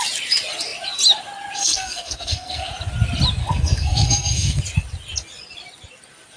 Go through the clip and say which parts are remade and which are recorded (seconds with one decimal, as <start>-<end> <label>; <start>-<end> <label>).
0.0-1.6 recorded; 1.6-2.7 remade; 2.7-3.4 recorded; 3.4-4.6 remade; 4.6-6.4 recorded